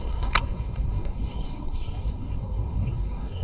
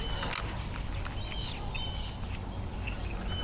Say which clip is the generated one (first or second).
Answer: first